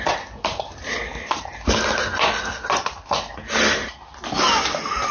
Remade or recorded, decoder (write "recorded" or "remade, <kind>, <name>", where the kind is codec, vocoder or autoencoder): recorded